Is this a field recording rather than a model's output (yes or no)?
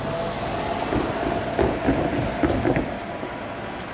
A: yes